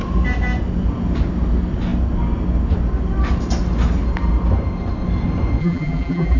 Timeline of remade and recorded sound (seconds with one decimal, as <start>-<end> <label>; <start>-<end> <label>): 0.0-5.6 recorded; 5.6-6.4 remade